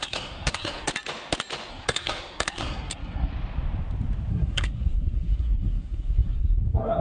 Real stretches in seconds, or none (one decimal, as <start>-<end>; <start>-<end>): 0.9-1.7; 3.3-4.3